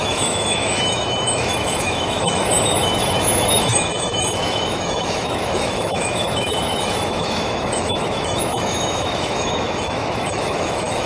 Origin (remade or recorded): remade